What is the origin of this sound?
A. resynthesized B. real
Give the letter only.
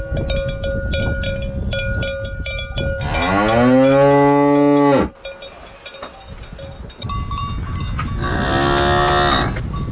B